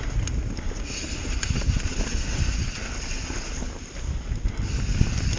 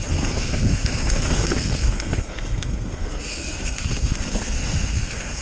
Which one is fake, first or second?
second